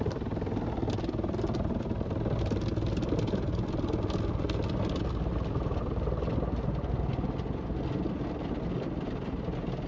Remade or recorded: recorded